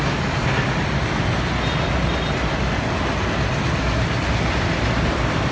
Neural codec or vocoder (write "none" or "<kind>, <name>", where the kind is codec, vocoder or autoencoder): none